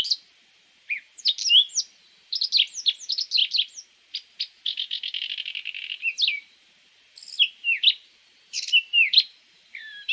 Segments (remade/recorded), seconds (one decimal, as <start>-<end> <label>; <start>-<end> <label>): 0.0-10.1 recorded